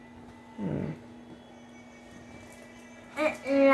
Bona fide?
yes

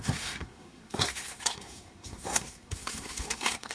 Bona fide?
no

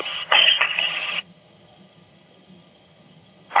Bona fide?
no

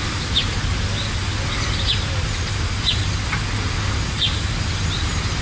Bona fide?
yes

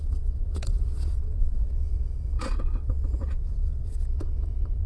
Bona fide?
no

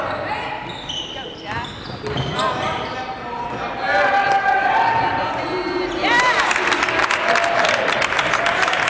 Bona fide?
yes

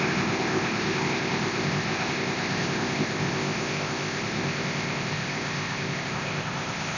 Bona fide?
no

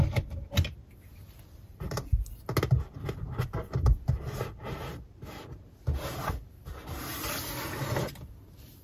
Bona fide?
yes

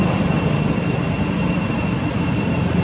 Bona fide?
yes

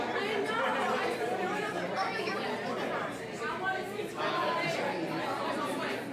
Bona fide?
yes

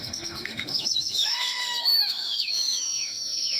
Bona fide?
no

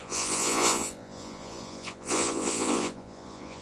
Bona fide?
no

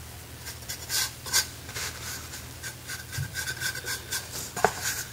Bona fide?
yes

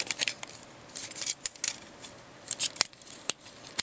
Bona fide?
yes